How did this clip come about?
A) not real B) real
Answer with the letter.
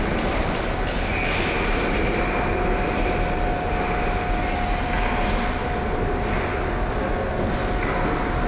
B